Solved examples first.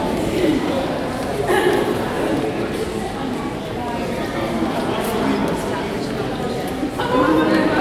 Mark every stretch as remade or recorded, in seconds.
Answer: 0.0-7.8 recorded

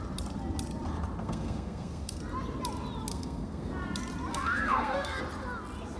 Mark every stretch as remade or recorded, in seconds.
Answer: 0.0-1.2 recorded; 1.2-2.2 remade; 2.2-3.1 recorded; 3.1-3.7 remade; 3.7-4.3 recorded; 4.3-5.2 remade; 5.2-6.0 recorded

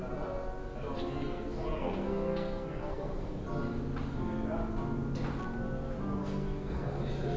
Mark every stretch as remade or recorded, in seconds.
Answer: 0.0-1.2 recorded; 1.2-3.4 remade; 3.4-6.2 recorded; 6.2-7.0 remade; 7.0-7.4 recorded

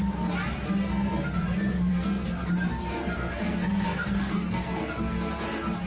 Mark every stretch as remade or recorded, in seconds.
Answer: 0.0-1.9 recorded; 1.9-2.5 remade; 2.5-3.0 recorded; 3.0-5.3 remade; 5.3-5.9 recorded

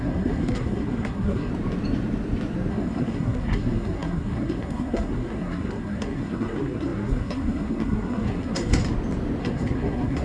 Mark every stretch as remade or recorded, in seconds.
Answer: 0.0-1.5 remade; 1.5-2.7 recorded; 2.7-8.8 remade; 8.8-9.4 recorded; 9.4-10.2 remade